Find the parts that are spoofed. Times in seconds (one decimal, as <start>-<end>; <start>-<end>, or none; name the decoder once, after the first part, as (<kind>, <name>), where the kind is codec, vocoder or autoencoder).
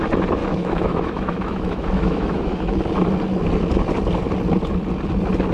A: 0.4-2.8 (autoencoder, DAC-VAE)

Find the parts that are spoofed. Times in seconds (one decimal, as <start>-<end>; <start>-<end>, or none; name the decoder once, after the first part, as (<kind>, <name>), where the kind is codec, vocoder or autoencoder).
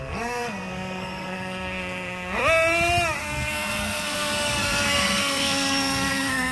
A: 0.0-2.4 (codec, SNAC); 3.2-6.5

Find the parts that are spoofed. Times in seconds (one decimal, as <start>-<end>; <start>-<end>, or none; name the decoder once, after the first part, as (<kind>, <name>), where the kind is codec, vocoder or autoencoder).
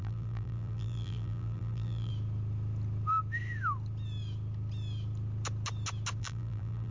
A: 0.0-2.1 (vocoder, BigVGAN v2); 6.2-6.9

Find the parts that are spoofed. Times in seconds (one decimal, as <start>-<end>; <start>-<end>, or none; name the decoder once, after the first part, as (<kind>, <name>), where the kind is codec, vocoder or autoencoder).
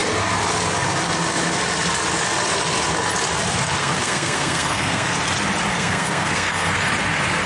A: 3.8-5.1 (codec, SNAC); 5.7-6.9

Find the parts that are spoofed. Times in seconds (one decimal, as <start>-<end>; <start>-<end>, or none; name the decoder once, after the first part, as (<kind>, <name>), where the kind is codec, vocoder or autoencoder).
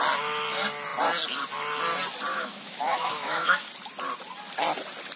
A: 2.3-3.7 (autoencoder, DAC-VAE)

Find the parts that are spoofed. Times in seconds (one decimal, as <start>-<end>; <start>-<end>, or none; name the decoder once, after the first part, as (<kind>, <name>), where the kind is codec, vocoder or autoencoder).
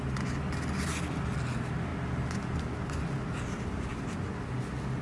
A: none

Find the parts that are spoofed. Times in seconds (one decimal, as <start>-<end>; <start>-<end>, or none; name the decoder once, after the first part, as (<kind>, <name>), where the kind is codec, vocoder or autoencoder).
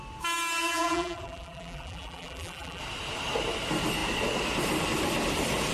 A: 0.6-2.8 (vocoder, BigVGAN v2)